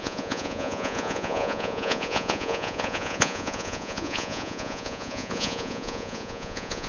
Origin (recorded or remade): remade